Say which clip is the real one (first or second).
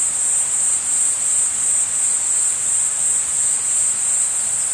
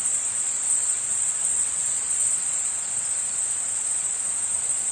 first